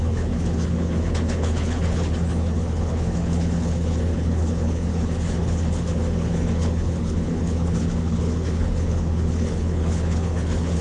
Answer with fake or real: fake